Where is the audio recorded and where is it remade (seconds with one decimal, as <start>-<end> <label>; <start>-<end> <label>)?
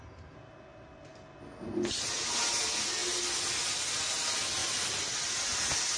0.0-6.0 recorded